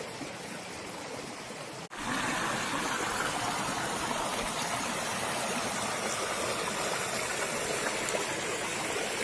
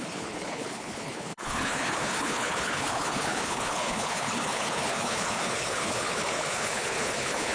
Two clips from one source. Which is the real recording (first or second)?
first